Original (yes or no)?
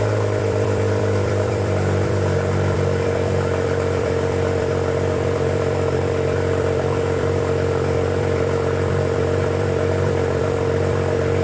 no